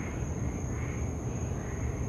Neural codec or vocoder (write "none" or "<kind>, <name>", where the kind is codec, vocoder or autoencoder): none